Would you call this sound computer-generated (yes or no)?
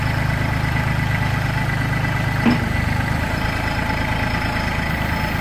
no